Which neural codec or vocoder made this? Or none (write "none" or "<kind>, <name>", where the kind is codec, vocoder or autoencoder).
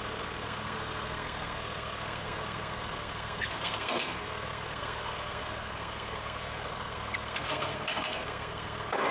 codec, SNAC